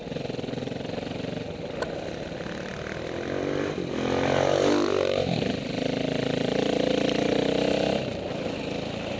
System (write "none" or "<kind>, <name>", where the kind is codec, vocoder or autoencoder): none